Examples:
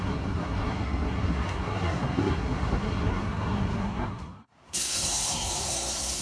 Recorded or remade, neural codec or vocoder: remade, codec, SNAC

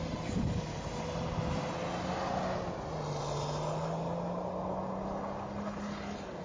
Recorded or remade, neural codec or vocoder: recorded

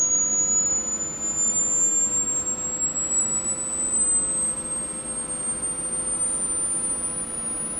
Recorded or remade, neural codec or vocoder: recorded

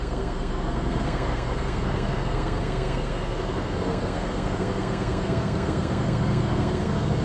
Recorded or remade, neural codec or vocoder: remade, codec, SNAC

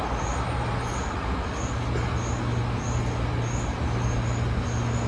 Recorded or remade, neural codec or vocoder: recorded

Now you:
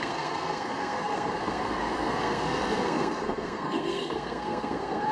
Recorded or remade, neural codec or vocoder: remade, codec, SNAC